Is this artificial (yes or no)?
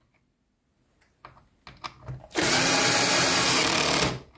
no